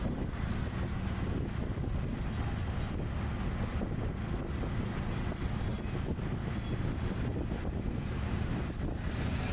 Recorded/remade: recorded